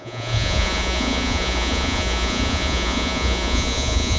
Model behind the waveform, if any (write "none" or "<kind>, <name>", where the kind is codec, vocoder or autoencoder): vocoder, Vocos